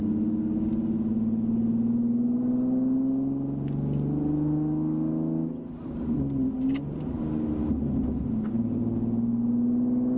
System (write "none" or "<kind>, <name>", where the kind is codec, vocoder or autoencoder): none